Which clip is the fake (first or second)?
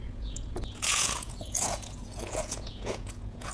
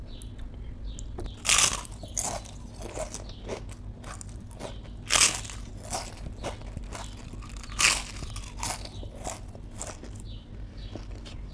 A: first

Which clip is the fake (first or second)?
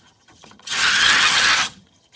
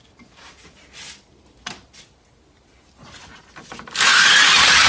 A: first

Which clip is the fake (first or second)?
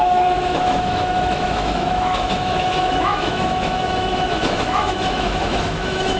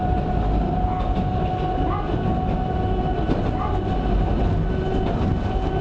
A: first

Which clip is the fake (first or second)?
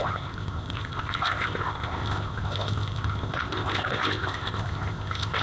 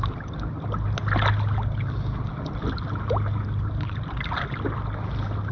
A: first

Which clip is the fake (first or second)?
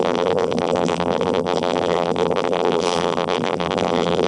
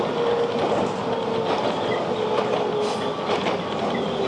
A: first